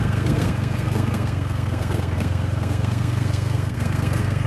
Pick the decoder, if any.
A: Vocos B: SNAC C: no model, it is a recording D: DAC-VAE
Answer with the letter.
B